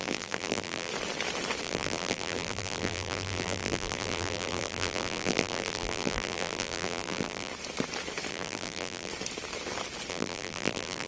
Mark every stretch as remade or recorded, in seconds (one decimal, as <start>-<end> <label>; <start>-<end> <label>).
0.0-0.9 remade; 0.9-1.6 recorded; 1.6-7.5 remade; 7.5-8.3 recorded; 8.3-9.1 remade; 9.1-10.1 recorded; 10.1-11.1 remade